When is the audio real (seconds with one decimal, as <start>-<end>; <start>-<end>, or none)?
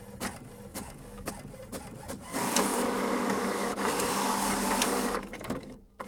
0.0-0.7; 1.3-2.3